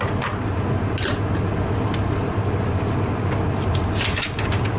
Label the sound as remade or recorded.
recorded